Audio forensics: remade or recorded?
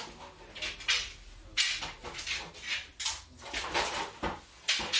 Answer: recorded